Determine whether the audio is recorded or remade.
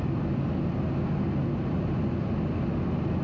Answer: recorded